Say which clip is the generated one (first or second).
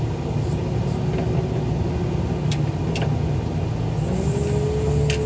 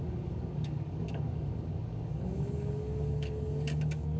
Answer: second